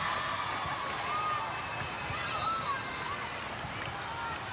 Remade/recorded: recorded